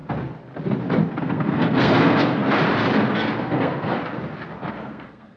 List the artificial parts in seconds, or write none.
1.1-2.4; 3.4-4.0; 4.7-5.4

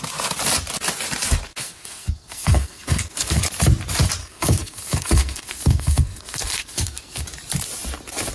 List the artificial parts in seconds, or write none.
1.5-3.4; 4.2-7.2

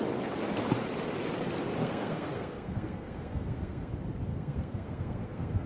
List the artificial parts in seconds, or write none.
1.8-3.9; 4.3-5.7

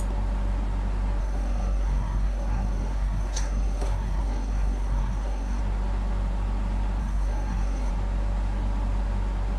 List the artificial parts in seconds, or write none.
1.2-5.6; 7.0-7.9

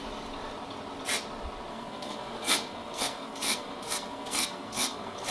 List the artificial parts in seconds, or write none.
1.7-5.3

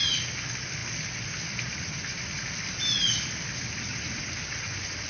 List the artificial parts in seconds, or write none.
none

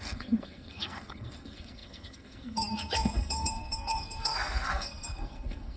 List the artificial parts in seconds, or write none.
0.0-5.8